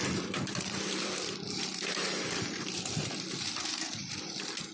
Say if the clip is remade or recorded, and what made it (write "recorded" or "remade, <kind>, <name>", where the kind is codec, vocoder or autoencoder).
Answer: remade, vocoder, BigVGAN v2